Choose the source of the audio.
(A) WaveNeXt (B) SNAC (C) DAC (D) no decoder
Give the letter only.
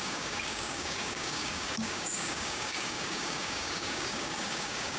C